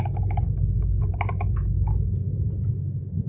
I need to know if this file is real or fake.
real